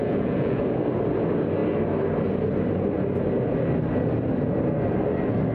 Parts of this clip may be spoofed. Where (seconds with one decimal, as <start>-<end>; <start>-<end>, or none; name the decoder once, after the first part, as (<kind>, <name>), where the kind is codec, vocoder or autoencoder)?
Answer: 0.0-0.6 (vocoder, Vocos)

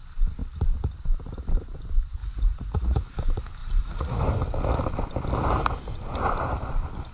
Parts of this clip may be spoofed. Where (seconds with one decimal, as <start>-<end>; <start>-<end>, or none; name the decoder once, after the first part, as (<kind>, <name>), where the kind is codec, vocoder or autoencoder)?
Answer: 2.2-3.0 (vocoder, Vocos); 3.6-4.2

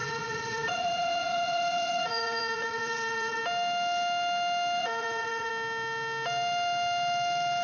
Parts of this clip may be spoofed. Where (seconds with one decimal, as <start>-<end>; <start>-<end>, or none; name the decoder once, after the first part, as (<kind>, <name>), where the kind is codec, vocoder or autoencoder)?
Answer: 0.0-3.4 (vocoder, Vocos); 4.8-5.5

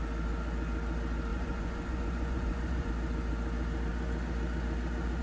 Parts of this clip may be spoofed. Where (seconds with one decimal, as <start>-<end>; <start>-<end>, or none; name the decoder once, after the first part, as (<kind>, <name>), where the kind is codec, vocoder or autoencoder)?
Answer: 1.3-2.9 (vocoder, Vocos)

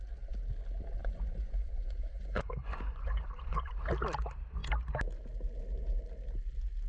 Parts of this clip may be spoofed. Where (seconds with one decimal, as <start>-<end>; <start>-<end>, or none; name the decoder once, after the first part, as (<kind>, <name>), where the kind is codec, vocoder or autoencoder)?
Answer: 1.0-3.7 (vocoder, Vocos)